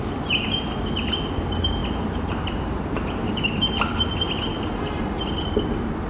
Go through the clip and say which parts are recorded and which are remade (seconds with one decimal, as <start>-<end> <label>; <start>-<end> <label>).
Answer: 0.0-6.1 recorded